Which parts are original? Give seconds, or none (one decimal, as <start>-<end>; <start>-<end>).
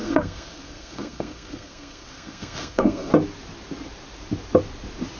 3.1-5.2